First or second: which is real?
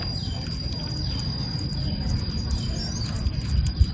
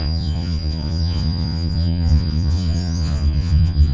first